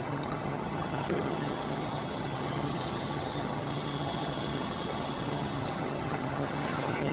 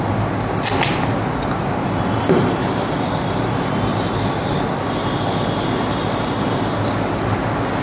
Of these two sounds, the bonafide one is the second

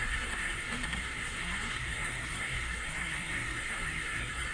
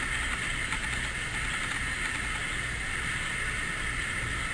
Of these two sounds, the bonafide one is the second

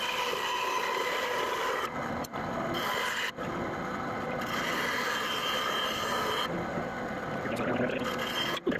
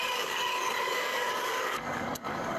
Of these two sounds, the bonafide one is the first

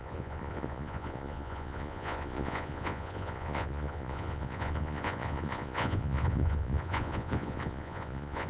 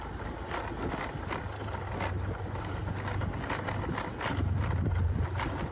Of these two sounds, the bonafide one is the second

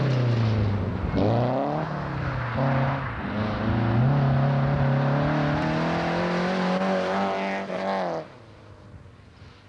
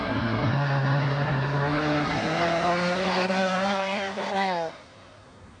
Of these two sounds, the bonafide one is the first